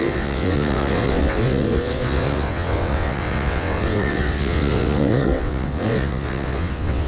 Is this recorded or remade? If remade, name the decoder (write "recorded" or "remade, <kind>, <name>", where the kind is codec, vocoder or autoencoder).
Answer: remade, vocoder, WaveNeXt